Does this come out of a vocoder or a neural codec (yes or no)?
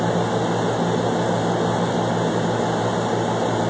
no